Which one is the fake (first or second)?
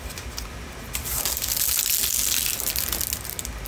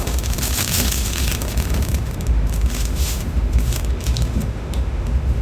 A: second